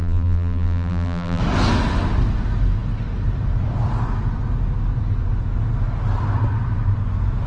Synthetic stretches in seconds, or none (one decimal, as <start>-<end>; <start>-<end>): 0.0-1.4

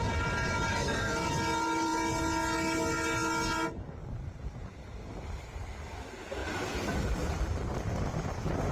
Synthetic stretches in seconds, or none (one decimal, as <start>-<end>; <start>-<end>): 0.7-1.3

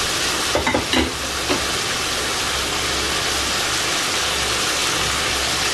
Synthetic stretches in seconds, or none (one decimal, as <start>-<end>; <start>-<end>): none

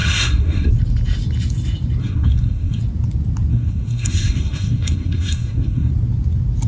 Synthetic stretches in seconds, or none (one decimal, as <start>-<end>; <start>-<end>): 0.0-0.7; 2.0-2.8; 3.5-5.9

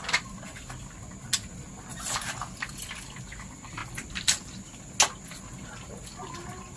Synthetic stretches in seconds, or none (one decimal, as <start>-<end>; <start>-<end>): 1.7-2.4; 3.8-4.9

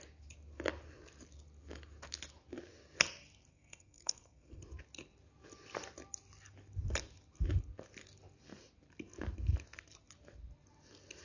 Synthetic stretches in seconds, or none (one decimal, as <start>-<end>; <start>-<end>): 3.5-4.6